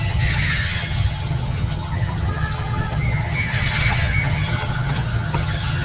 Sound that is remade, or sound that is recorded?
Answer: remade